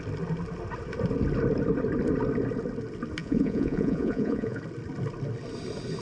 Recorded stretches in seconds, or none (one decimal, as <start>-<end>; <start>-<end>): 0.0-3.2; 4.6-6.0